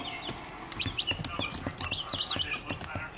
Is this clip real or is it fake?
real